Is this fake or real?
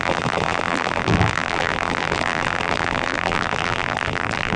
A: fake